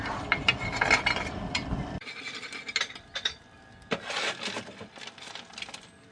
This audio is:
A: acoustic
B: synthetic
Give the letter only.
A